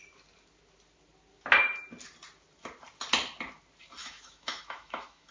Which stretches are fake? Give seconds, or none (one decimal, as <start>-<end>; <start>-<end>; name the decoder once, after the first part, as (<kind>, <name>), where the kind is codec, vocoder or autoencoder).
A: 4.0-5.3 (autoencoder, DAC-VAE)